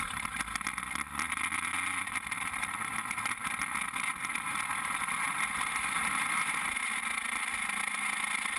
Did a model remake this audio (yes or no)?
no